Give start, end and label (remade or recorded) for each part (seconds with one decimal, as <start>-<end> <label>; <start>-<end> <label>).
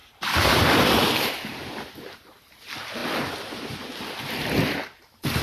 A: 0.0-5.4 recorded